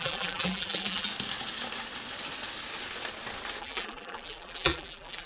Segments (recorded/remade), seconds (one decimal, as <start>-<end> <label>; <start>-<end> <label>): 0.0-1.1 remade; 1.1-3.6 recorded; 3.6-5.3 remade

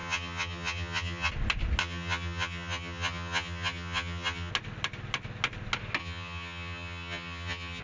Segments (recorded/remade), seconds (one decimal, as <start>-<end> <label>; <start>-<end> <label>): 0.0-1.3 remade; 1.3-1.8 recorded; 1.8-4.5 remade; 4.5-6.0 recorded; 6.0-7.8 remade

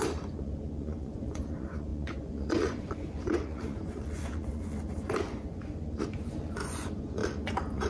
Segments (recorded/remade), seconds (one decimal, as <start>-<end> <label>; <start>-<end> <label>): 0.0-7.9 remade

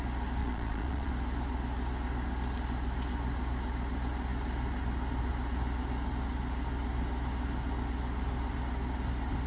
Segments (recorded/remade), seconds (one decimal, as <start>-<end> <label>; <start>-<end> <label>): 0.0-0.4 recorded; 0.4-1.1 remade; 1.1-9.5 recorded